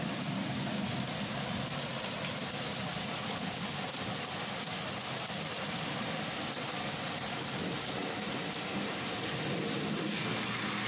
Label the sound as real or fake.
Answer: real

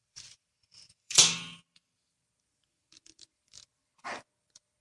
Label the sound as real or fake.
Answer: fake